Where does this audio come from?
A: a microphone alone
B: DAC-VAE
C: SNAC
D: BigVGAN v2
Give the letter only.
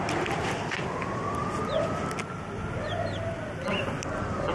A